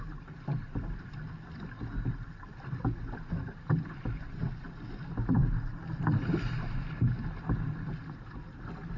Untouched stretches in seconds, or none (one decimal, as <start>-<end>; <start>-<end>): 0.0-9.0